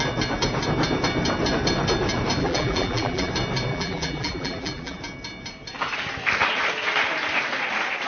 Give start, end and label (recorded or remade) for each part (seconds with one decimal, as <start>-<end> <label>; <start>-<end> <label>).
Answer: 0.0-2.4 recorded; 2.4-3.3 remade; 3.3-3.7 recorded; 3.7-5.0 remade; 5.0-8.1 recorded